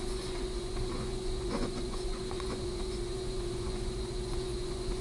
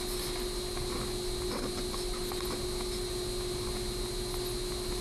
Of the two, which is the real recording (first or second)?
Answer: second